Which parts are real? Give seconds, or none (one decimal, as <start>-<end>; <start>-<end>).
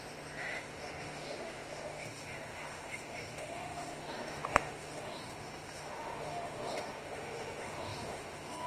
none